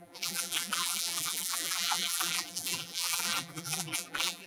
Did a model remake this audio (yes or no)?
yes